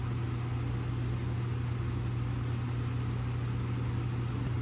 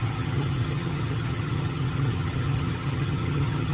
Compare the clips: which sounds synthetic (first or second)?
second